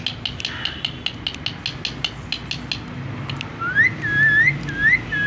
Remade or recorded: recorded